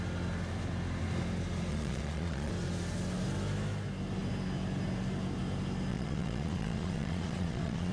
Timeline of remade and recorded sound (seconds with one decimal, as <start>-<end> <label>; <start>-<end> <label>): 0.0-1.7 recorded; 1.7-2.5 remade; 2.5-5.9 recorded; 5.9-7.9 remade